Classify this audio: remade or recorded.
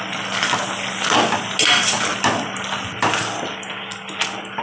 recorded